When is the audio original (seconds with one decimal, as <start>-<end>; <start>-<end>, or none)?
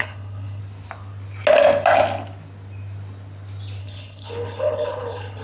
0.6-3.8